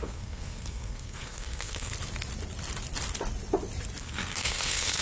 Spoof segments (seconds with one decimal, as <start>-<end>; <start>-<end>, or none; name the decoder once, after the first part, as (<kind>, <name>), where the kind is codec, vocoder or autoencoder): 0.0-1.9 (codec, SNAC); 4.0-5.0